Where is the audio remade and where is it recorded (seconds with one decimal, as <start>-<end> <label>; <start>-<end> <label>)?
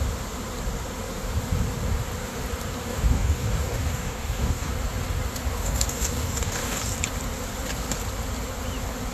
0.0-2.9 recorded; 2.9-4.7 remade; 4.7-5.5 recorded; 5.5-6.8 remade; 6.8-9.1 recorded